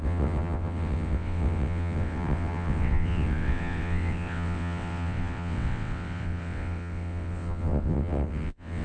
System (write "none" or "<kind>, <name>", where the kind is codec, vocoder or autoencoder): vocoder, WaveNeXt